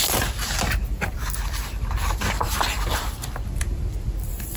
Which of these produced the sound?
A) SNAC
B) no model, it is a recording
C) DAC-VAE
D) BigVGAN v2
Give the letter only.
D